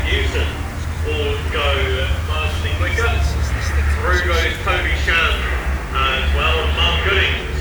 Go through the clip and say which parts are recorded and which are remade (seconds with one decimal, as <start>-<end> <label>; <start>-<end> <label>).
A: 0.0-1.8 recorded; 1.8-3.5 remade; 3.5-7.6 recorded